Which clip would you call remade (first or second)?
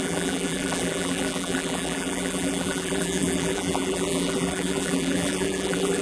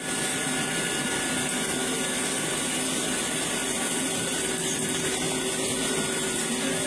first